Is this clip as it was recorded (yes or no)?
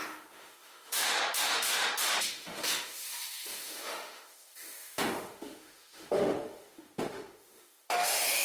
no